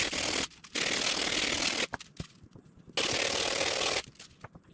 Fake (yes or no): no